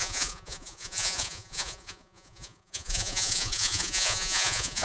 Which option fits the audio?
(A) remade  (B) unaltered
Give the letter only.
A